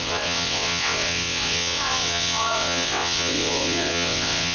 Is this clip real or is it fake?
fake